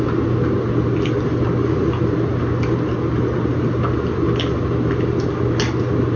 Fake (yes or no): no